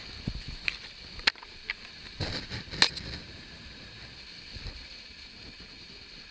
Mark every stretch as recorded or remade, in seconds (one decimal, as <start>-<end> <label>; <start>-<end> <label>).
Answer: 0.0-3.2 recorded; 3.2-4.0 remade; 4.0-6.3 recorded